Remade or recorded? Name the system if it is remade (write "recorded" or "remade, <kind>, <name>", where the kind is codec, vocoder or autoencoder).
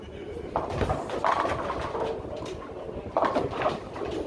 recorded